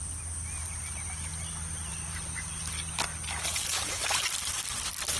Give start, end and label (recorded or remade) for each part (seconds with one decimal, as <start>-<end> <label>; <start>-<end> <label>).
0.0-5.2 recorded

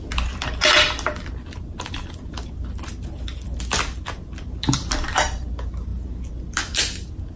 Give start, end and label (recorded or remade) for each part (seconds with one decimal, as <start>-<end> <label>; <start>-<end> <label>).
0.0-7.4 recorded